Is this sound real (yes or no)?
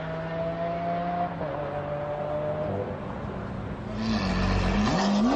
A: yes